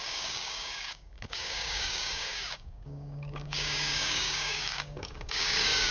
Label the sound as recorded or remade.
remade